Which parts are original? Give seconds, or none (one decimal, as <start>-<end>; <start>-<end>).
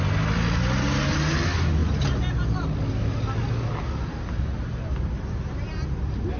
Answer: 0.0-6.4